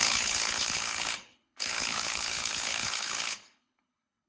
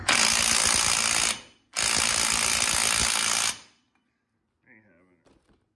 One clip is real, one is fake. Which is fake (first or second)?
first